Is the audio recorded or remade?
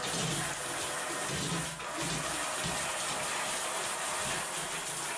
recorded